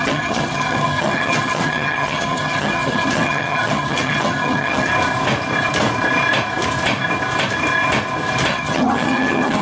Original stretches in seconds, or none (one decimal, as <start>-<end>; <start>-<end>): 4.9-8.5